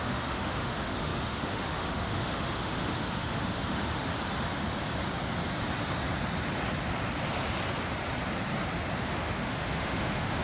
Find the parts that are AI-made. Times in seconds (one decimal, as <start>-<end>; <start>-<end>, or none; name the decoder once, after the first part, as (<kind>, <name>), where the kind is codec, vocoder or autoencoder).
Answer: 0.0-4.1 (autoencoder, DAC-VAE); 9.0-10.4